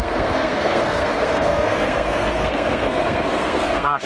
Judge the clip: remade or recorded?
remade